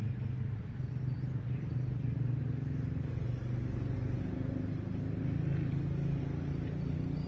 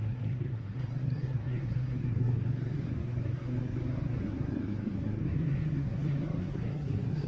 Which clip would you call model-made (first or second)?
second